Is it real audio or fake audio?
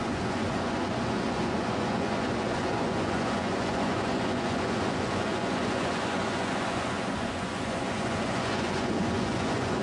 fake